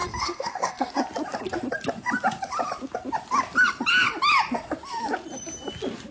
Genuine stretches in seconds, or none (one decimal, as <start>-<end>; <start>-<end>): 0.9-6.1